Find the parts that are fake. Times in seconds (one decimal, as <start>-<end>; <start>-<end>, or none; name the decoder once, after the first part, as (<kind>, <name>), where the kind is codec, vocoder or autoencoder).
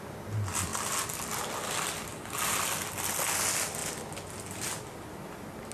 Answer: none